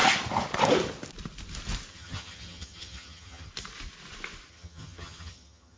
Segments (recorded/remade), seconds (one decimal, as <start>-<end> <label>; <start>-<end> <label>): 0.0-1.9 recorded; 1.9-3.5 remade; 3.5-4.5 recorded; 4.5-5.8 remade